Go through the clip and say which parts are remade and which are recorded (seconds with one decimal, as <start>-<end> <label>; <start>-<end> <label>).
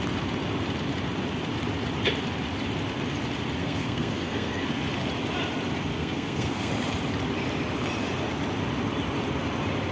0.0-3.6 recorded; 3.6-4.8 remade; 4.8-5.9 recorded; 5.9-6.7 remade; 6.7-9.9 recorded